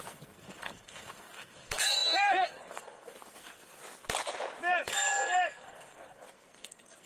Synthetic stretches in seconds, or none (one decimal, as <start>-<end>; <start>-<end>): 0.0-3.8; 4.7-7.1